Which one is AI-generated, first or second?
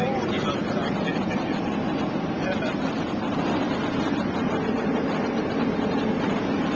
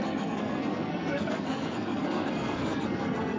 second